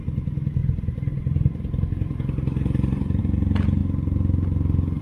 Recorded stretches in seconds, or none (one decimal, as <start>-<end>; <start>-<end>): 0.0-0.6; 3.2-5.0